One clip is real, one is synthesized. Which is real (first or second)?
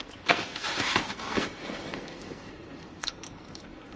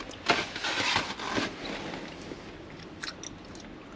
second